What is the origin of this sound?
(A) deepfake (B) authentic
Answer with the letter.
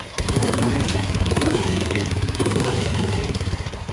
A